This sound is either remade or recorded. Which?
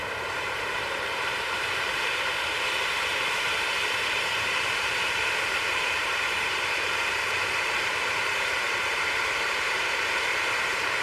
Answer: remade